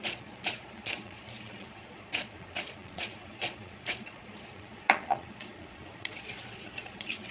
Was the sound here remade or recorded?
remade